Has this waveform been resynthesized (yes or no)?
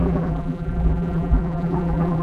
yes